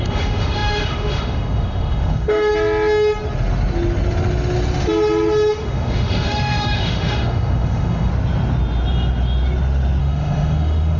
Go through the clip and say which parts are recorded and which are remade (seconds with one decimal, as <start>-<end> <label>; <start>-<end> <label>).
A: 0.0-2.5 remade; 2.5-5.5 recorded; 5.5-8.1 remade; 8.1-10.0 recorded; 10.0-11.0 remade